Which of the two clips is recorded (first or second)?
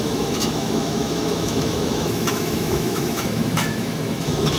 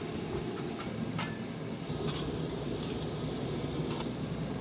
second